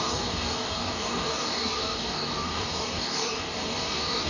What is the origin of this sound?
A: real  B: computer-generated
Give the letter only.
B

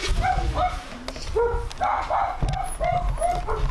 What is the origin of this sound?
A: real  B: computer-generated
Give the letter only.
A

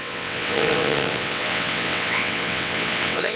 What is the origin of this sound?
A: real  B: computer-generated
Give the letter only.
B